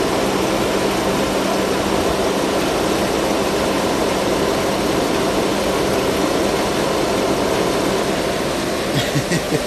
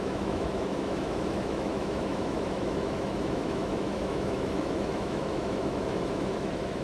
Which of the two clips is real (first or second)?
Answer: first